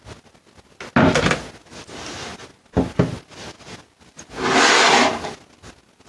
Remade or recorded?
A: recorded